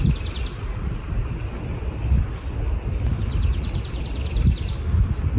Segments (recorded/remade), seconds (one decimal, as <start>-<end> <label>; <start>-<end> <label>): 0.0-0.5 recorded; 0.5-1.1 remade; 1.1-5.4 recorded